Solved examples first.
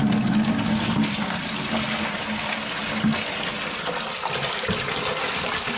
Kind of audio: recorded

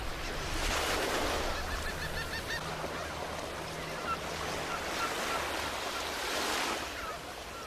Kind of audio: recorded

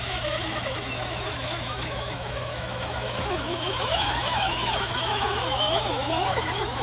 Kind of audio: remade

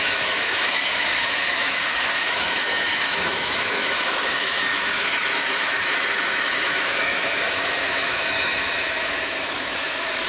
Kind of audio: remade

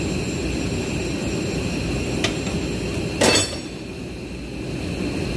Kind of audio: recorded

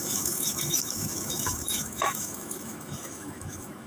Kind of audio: remade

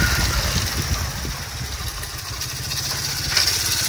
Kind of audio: recorded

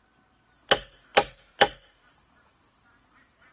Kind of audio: recorded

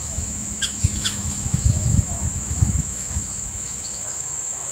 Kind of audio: remade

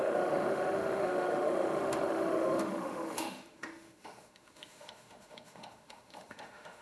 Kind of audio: remade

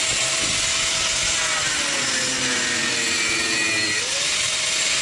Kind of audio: recorded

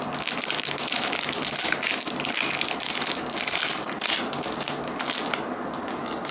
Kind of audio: recorded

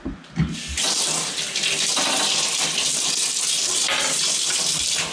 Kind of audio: recorded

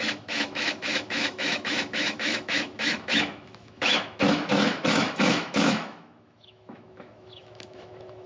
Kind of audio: remade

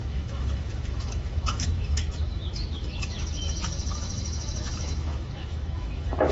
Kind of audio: remade